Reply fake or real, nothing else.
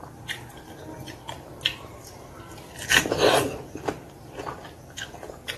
real